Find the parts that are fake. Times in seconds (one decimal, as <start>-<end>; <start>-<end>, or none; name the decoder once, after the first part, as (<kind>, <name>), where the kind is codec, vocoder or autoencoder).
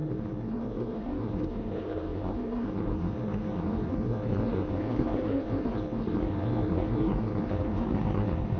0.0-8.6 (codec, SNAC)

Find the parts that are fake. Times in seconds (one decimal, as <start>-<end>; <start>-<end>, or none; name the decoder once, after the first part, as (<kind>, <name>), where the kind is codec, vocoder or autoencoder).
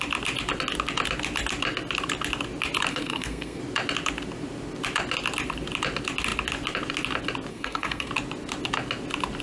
2.9-3.6 (codec, SNAC); 7.5-8.1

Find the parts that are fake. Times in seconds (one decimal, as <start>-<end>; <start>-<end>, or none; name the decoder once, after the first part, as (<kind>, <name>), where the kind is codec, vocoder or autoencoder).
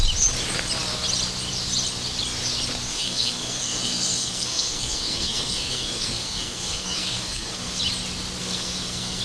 2.9-7.8 (codec, SNAC); 8.4-9.2